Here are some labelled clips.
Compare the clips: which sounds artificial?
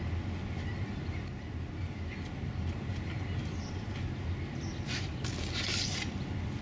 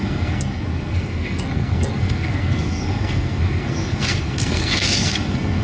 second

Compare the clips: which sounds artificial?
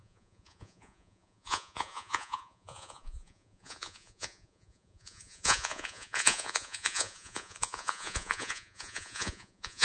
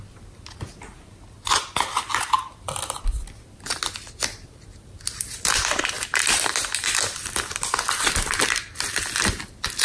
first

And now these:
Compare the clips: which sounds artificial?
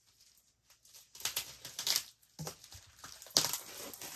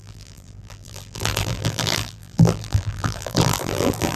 second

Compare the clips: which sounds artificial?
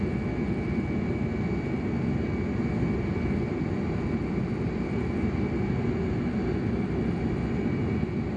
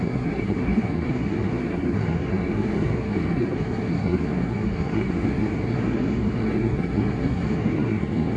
second